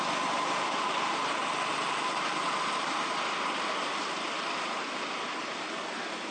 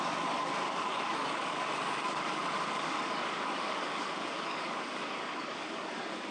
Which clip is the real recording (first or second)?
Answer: first